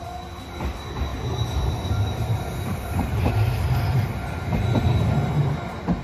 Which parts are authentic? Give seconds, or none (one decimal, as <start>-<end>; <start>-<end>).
0.0-1.1; 3.3-6.0